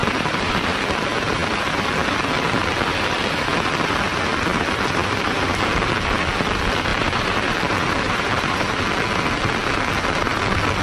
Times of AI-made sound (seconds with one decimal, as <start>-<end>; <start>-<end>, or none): 0.0-0.6; 6.9-8.8